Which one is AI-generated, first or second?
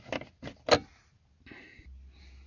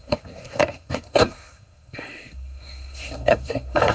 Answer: second